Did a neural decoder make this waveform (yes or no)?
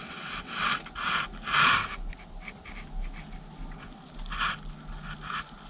no